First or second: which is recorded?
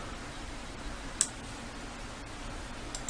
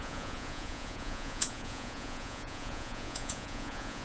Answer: first